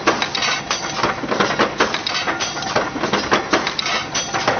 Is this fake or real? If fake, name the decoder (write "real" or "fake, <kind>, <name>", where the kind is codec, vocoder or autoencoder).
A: real